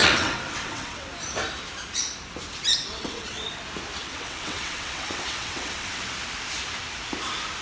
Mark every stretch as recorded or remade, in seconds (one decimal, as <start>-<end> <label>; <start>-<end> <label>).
0.0-1.1 remade; 1.1-2.7 recorded; 2.7-3.6 remade; 3.6-4.0 recorded; 4.0-6.0 remade; 6.0-7.6 recorded